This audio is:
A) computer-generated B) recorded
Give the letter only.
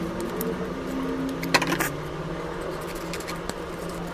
B